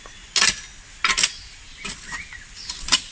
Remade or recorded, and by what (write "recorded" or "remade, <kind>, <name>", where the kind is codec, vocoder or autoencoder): recorded